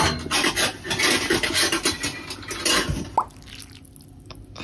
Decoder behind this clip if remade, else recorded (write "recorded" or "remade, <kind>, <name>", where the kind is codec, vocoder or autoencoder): recorded